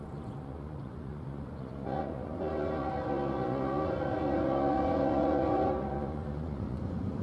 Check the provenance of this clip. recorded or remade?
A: remade